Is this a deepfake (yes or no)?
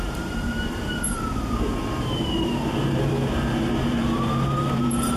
yes